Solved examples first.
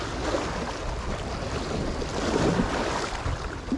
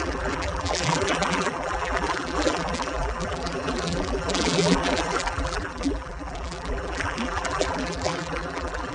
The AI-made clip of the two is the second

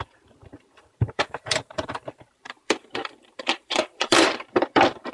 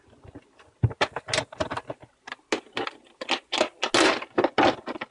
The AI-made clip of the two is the first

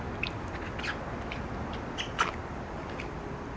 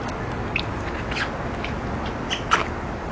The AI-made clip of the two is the first